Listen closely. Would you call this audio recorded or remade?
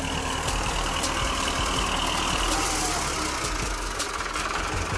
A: recorded